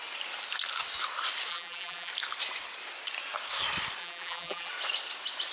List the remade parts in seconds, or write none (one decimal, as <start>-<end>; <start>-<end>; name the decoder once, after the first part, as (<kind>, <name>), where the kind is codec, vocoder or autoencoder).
1.5-2.1 (vocoder, BigVGAN v2); 4.0-4.7

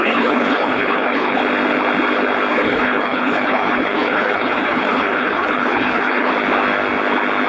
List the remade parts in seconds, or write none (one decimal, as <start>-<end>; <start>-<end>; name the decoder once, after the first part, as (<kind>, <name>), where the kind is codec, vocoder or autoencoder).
0.0-1.4 (codec, HILCodec); 2.5-6.3